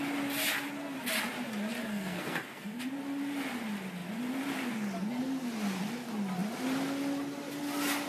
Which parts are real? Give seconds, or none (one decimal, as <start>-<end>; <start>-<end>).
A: 0.0-1.8; 2.8-8.1